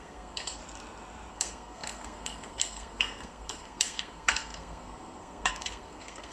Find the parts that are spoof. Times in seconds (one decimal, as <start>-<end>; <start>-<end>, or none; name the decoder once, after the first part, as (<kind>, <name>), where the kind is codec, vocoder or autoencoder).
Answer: 0.0-0.6 (codec, SNAC); 1.3-6.3